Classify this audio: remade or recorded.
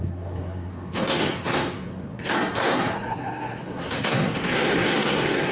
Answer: remade